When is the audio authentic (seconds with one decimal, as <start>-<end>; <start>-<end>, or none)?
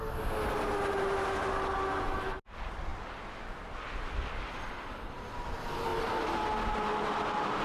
0.0-5.9; 6.7-7.6